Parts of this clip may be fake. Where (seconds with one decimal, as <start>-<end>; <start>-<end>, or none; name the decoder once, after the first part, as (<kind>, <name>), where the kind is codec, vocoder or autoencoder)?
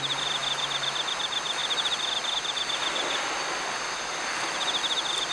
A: none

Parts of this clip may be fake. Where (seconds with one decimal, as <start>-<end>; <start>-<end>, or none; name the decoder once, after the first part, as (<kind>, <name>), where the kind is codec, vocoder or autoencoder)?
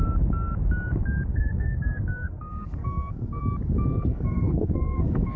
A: 1.3-3.4 (codec, SNAC); 3.9-5.4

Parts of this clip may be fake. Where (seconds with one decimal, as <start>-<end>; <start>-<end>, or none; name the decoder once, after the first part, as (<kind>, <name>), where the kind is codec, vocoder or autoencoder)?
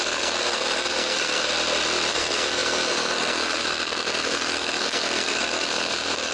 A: 0.0-1.5 (codec, SNAC); 2.1-6.3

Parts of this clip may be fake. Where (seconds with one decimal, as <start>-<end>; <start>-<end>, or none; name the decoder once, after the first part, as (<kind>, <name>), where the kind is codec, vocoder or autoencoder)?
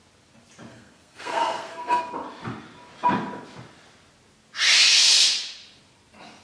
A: 0.7-2.0 (codec, SNAC)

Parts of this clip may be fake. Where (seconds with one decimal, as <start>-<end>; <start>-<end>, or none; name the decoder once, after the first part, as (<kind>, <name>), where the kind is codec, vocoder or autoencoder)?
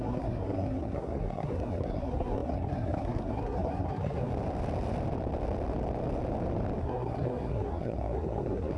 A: 0.0-4.3 (codec, SNAC); 6.8-8.8